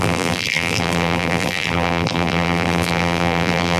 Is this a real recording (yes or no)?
no